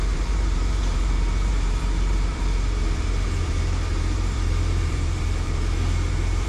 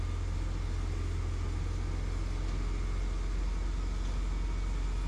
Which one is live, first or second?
second